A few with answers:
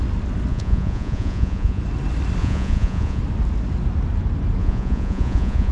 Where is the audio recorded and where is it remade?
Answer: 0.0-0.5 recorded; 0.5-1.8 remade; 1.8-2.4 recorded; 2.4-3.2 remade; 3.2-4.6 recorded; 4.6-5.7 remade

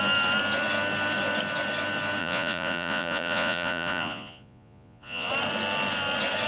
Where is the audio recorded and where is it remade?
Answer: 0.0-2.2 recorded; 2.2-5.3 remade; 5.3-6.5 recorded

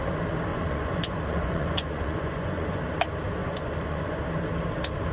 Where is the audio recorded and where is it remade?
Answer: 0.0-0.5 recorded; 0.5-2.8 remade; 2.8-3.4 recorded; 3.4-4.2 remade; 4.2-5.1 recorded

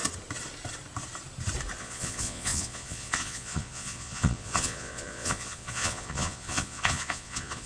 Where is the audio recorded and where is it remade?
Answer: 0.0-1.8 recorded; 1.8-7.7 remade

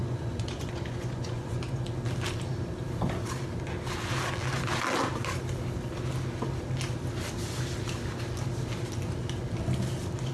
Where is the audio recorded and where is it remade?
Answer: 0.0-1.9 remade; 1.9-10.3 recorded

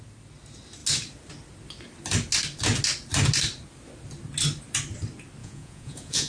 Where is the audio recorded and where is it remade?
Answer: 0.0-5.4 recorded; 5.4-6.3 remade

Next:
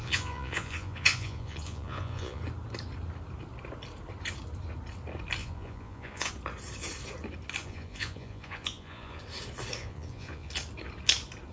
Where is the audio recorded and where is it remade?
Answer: 0.0-2.4 remade; 2.4-5.4 recorded; 5.4-6.3 remade; 6.3-7.6 recorded; 7.6-9.2 remade; 9.2-9.8 recorded; 9.8-10.5 remade; 10.5-11.5 recorded

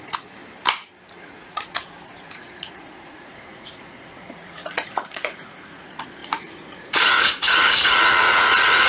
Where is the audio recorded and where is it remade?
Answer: 0.0-0.4 remade; 0.4-1.1 recorded; 1.1-8.9 remade